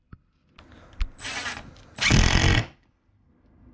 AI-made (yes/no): yes